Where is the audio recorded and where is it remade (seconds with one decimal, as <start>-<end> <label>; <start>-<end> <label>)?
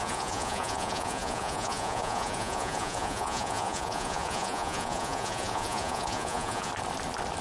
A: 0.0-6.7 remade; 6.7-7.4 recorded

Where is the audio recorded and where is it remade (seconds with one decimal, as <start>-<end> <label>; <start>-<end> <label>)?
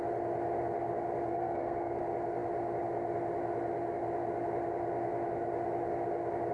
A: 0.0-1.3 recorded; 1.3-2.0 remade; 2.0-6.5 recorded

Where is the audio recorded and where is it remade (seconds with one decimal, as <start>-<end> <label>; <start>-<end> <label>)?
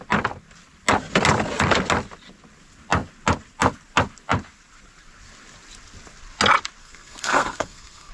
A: 0.0-6.8 recorded; 6.8-8.1 remade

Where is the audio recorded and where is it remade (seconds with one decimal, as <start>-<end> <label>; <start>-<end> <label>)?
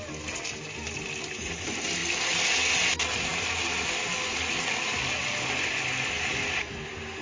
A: 0.0-3.3 recorded; 3.3-7.2 remade